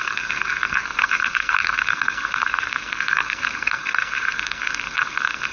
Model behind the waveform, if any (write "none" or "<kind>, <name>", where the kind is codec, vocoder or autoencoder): codec, SNAC